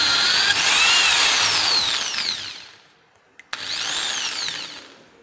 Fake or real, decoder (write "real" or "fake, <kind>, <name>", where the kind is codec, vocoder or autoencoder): real